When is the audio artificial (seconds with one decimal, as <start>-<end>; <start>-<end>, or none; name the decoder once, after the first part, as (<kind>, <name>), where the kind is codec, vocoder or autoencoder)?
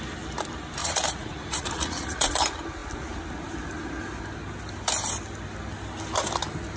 0.8-2.3 (vocoder, Vocos)